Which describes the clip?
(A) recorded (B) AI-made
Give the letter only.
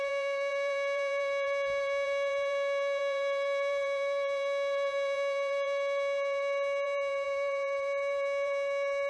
B